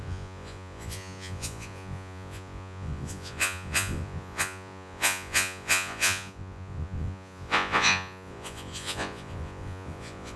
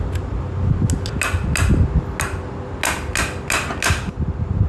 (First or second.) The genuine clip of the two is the second